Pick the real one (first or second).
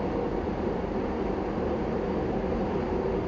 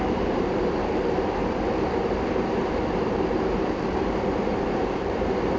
first